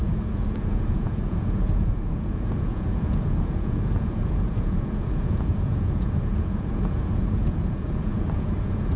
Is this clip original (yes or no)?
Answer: no